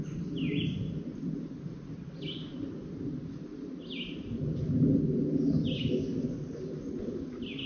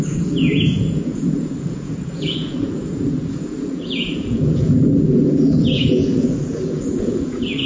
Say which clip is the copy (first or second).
second